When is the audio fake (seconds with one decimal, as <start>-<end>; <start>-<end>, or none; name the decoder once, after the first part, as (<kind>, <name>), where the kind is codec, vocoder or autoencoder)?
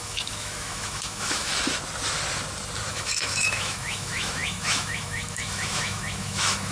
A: 0.0-1.5 (autoencoder, DAC-VAE); 2.9-6.7